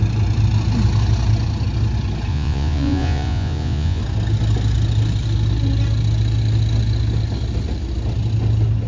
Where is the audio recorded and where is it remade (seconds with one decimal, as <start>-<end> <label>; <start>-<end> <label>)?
0.0-2.3 recorded; 2.3-4.0 remade; 4.0-8.9 recorded